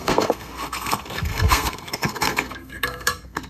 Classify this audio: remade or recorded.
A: remade